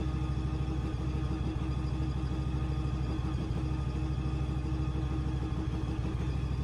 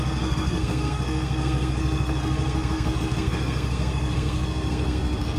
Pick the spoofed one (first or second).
second